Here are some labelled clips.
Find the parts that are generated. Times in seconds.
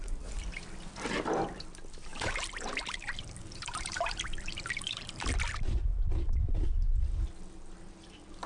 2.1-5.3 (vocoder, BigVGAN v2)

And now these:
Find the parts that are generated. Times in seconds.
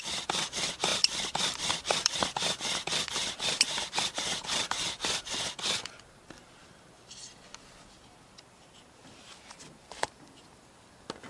0.9-4.9 (vocoder, BigVGAN v2); 6.6-7.3; 9.0-10.6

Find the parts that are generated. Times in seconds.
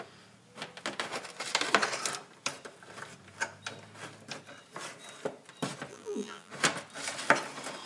5.9-6.5 (vocoder, BigVGAN v2)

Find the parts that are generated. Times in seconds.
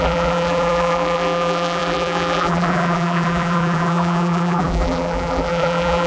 0.0-6.1 (vocoder, BigVGAN v2)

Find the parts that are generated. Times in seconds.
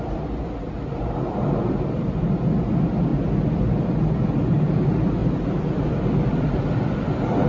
3.1-3.8 (vocoder, BigVGAN v2); 5.2-6.8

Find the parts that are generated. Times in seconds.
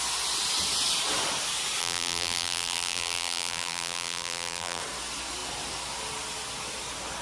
1.8-4.8 (vocoder, BigVGAN v2)